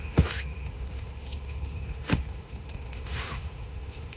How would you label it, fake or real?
fake